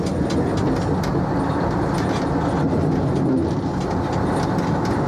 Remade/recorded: recorded